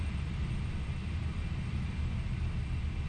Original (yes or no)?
yes